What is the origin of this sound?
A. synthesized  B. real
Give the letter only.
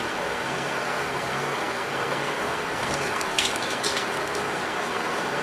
A